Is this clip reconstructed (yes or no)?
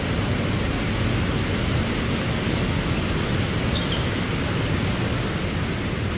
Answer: no